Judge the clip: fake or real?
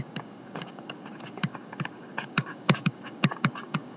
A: fake